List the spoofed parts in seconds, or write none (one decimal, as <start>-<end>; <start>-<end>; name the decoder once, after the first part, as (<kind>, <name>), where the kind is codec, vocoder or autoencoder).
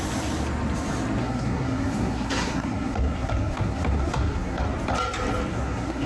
1.2-4.6 (codec, SNAC); 5.5-6.1